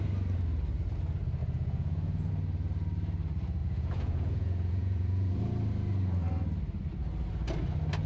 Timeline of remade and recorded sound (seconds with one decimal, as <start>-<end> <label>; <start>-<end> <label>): 0.0-1.4 recorded; 1.4-2.3 remade; 2.3-3.6 recorded; 3.6-5.5 remade; 5.5-8.1 recorded